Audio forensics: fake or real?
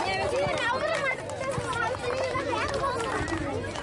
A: real